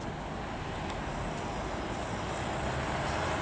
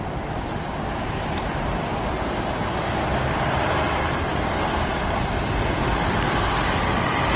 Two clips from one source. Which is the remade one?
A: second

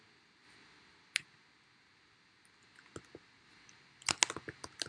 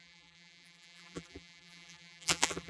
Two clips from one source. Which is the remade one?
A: second